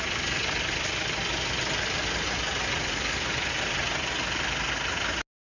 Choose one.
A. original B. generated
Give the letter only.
A